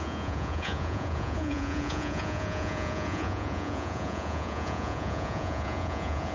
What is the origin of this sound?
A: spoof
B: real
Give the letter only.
A